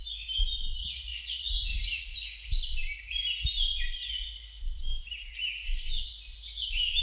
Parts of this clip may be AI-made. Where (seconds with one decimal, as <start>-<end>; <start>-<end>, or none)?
0.8-2.0